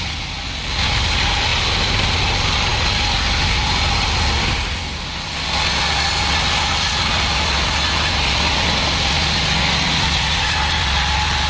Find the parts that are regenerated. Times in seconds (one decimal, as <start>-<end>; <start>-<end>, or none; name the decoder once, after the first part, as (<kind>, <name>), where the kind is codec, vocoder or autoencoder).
none